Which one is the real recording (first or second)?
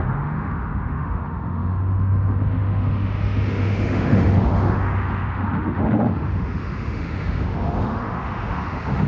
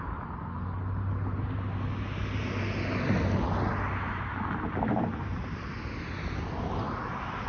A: second